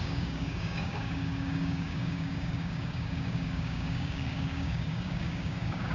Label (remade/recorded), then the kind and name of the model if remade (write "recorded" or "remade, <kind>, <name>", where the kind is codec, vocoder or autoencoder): remade, codec, DAC